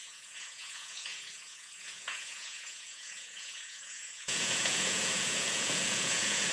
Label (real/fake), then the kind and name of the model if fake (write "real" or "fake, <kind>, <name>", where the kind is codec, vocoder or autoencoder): fake, vocoder, Vocos